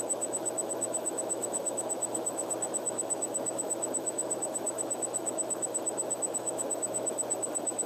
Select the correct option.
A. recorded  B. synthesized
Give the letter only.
B